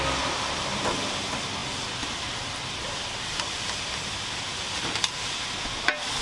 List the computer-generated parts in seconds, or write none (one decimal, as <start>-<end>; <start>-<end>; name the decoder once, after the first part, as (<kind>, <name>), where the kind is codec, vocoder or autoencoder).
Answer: 0.0-1.6 (vocoder, BigVGAN v2); 2.3-6.2